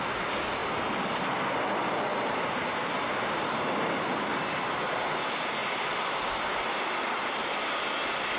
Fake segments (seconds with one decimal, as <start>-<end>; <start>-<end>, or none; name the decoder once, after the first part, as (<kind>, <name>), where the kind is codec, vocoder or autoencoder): 0.6-1.7 (vocoder, BigVGAN v2); 2.1-2.6; 5.6-7.3